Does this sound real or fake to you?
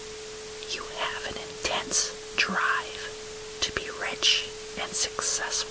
real